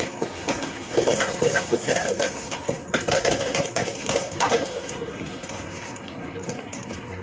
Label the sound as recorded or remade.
remade